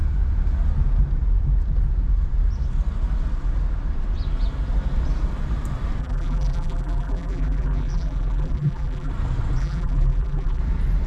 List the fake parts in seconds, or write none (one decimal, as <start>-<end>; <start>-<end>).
6.0-9.1; 9.6-10.6